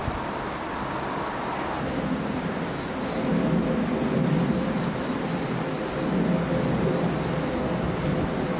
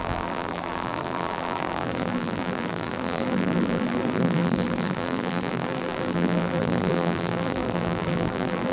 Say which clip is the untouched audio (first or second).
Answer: first